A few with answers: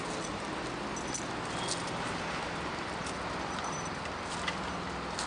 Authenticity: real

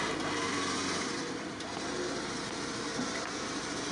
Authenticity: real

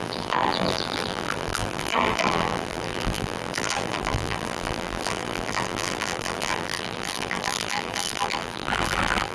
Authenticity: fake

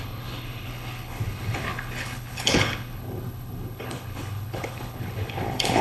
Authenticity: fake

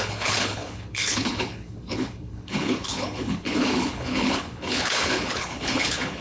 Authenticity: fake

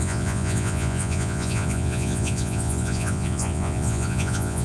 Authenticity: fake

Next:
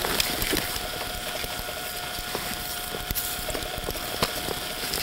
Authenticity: fake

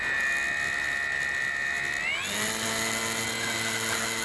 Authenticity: real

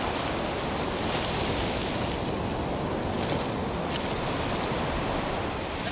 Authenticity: real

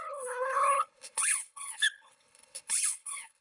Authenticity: fake